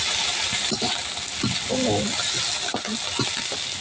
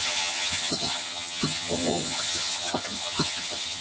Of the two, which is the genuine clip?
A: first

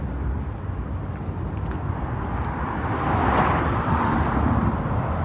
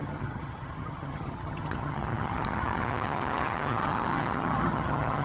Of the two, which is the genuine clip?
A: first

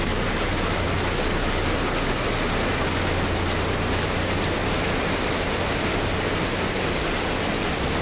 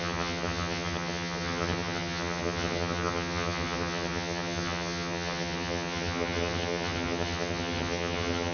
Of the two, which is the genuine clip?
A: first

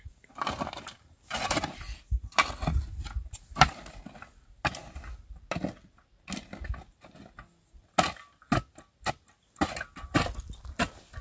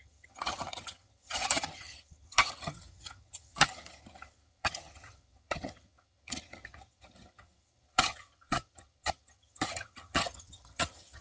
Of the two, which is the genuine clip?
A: first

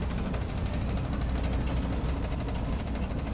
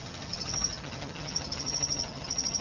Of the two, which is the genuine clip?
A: first